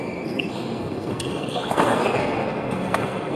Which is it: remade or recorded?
remade